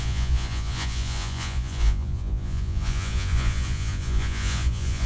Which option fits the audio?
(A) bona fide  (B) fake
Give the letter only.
B